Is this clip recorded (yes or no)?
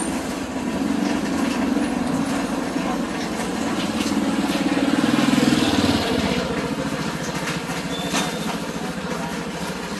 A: yes